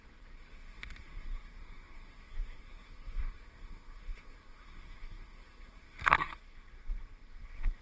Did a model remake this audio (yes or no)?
yes